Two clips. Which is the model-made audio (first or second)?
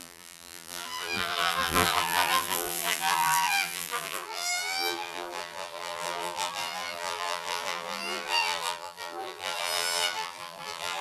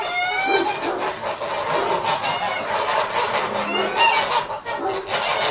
first